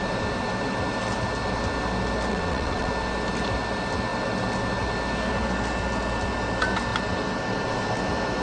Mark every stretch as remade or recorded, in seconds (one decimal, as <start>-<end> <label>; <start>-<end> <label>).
0.0-2.3 recorded; 2.3-2.9 remade; 2.9-8.4 recorded

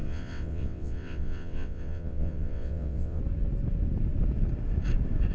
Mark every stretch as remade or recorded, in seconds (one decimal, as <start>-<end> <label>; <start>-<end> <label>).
0.0-3.2 remade; 3.2-5.3 recorded

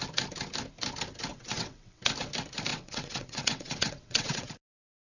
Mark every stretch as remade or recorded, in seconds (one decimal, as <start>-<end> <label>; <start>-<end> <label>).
0.0-1.3 recorded; 1.3-2.0 remade; 2.0-2.7 recorded; 2.7-4.5 remade; 4.5-5.0 recorded

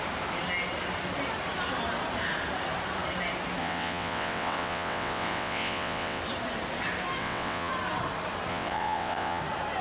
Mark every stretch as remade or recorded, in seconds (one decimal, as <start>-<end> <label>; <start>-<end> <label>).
0.0-3.6 recorded; 3.6-6.2 remade; 6.2-7.2 recorded; 7.2-7.7 remade; 7.7-8.5 recorded; 8.5-9.4 remade; 9.4-9.8 recorded